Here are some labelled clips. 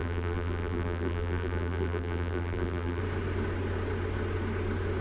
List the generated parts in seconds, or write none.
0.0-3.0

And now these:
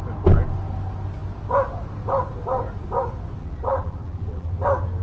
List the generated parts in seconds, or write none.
3.4-4.5

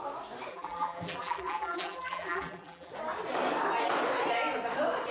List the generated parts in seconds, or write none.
0.5-2.9

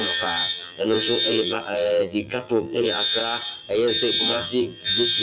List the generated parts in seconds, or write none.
0.0-3.2; 4.2-5.2

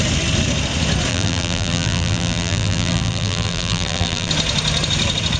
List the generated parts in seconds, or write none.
1.1-4.3

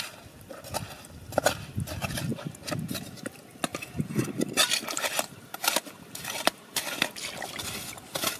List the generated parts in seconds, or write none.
3.7-6.8

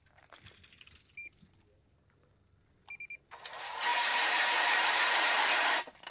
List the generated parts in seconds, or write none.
3.9-5.3